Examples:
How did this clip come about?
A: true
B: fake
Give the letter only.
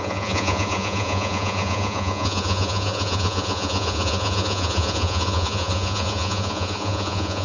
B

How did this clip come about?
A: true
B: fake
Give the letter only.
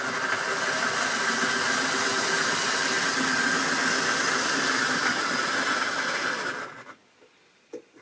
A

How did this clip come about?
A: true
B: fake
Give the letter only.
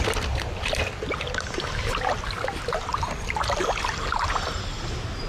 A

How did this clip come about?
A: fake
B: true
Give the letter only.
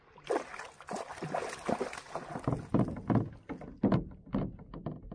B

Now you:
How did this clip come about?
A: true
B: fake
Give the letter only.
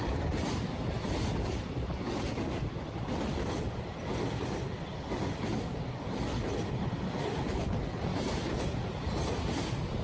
A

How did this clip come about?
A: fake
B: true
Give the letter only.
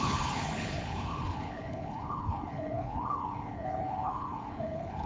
A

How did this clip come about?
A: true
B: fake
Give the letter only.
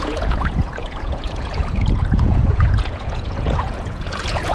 B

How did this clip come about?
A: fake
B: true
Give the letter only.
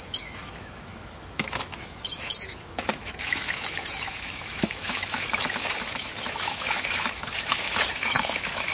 A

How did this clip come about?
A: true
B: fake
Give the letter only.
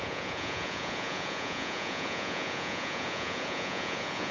B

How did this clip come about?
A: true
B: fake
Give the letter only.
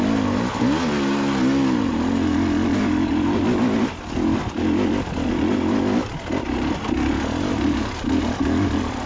A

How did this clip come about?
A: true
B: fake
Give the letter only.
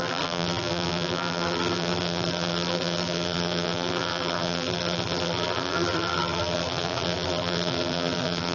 B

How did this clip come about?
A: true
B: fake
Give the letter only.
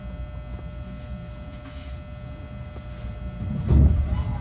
A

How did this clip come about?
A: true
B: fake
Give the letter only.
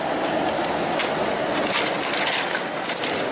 A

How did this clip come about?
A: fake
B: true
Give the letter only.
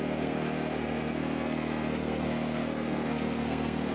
A